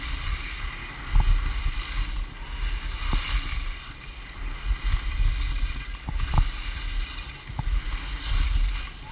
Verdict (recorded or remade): recorded